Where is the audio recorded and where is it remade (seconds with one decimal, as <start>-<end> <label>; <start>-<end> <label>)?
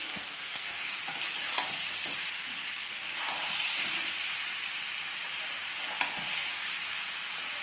0.0-1.0 remade; 1.0-7.6 recorded